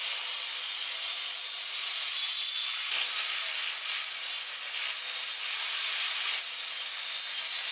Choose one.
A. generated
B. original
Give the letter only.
B